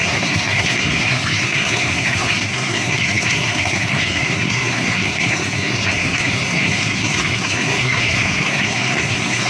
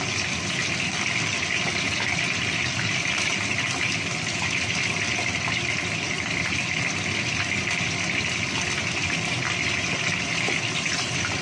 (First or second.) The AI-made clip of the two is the first